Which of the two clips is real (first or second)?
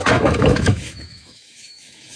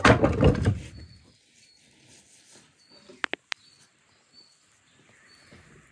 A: second